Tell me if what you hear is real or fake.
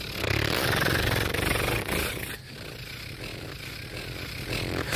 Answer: real